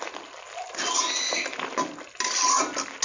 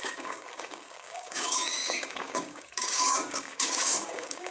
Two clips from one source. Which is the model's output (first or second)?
second